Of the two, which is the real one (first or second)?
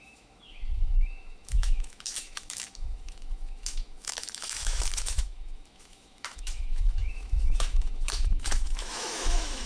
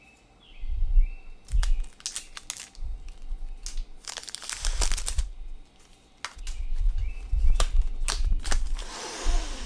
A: second